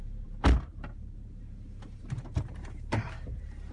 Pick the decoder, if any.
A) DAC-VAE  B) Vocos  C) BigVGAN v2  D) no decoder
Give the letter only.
C